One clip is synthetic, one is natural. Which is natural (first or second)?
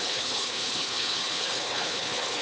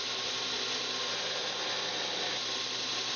second